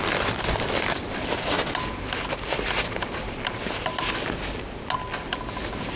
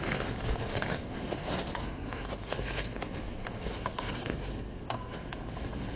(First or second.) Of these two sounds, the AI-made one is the second